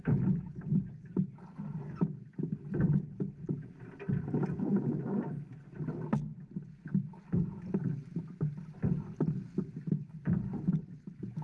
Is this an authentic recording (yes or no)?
yes